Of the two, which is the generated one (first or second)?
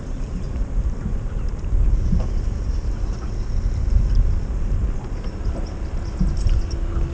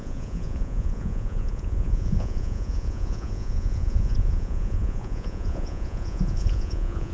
second